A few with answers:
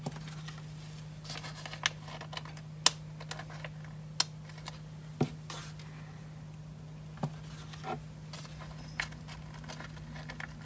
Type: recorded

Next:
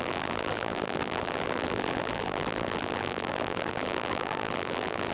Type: remade